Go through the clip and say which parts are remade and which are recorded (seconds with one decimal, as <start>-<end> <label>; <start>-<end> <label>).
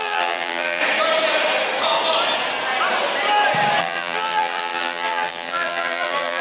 0.0-0.8 remade; 0.8-3.8 recorded; 3.8-6.4 remade